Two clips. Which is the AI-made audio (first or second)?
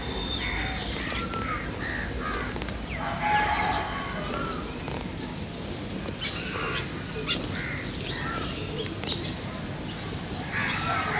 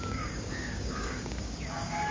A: second